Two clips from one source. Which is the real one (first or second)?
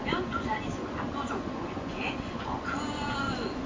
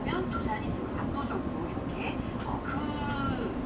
second